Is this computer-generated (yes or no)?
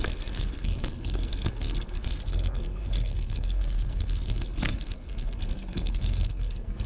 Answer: yes